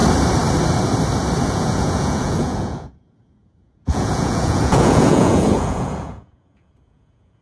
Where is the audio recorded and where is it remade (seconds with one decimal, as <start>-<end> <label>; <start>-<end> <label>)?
0.0-1.4 recorded; 1.4-7.4 remade